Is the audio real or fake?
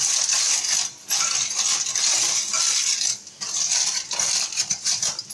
real